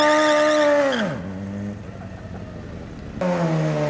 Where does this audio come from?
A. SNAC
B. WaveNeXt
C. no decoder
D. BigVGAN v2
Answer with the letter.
C